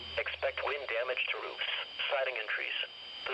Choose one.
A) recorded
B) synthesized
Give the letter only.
A